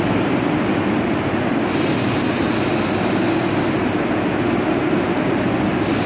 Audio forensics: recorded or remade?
recorded